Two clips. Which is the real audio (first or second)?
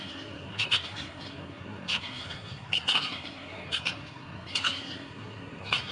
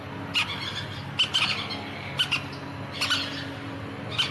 second